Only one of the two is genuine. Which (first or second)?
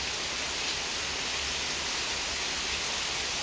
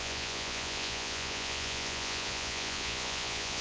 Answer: first